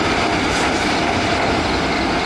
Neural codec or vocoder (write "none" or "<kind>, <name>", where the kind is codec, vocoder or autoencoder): none